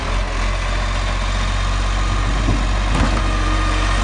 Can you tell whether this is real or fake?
real